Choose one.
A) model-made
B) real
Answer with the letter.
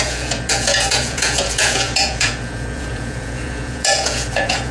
A